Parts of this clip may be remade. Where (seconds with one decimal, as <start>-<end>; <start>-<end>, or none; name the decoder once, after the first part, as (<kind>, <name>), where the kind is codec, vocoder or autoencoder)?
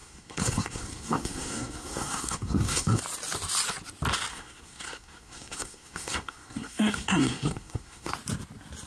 0.0-3.0 (codec, SNAC); 4.3-8.1